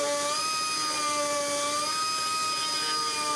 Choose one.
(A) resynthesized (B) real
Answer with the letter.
B